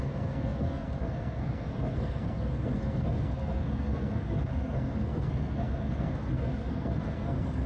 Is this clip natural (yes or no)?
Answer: no